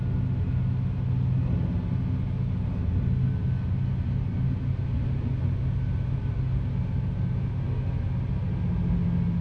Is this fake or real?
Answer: real